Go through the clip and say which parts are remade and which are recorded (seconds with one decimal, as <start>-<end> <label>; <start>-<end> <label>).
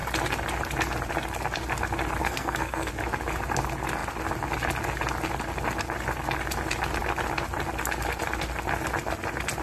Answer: 0.0-2.2 recorded; 2.2-2.9 remade; 2.9-9.6 recorded